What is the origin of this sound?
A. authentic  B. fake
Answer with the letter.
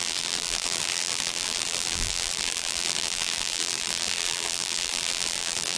B